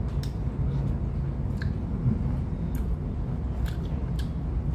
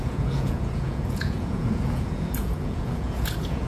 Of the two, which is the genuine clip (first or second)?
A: first